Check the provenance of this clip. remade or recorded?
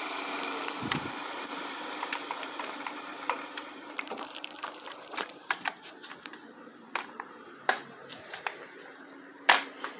remade